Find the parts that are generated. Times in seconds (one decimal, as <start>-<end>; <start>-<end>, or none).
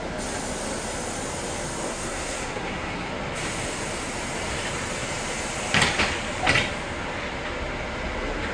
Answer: 1.9-3.1